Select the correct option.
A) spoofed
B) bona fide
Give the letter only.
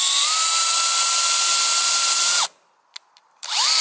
B